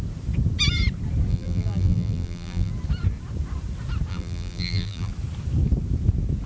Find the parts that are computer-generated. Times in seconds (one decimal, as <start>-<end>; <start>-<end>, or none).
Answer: 1.3-2.7; 4.1-5.1